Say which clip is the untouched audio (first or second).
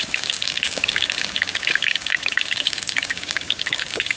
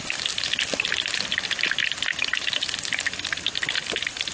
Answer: second